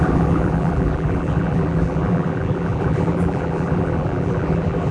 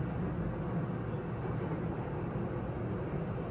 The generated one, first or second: first